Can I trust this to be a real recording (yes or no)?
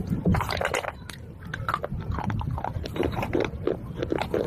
yes